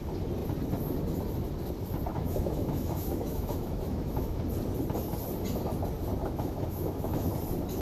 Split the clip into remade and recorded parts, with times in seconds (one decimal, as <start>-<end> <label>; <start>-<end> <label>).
0.0-2.1 recorded; 2.1-4.4 remade; 4.4-6.2 recorded; 6.2-7.3 remade; 7.3-7.8 recorded